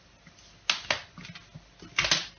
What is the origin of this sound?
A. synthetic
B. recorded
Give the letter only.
B